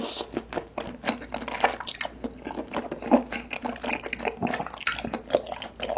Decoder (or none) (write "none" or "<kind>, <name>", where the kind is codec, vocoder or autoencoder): none